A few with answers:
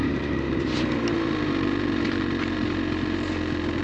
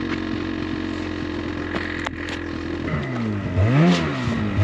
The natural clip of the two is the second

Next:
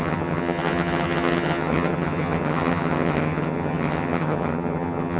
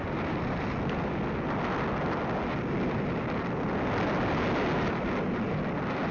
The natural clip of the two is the second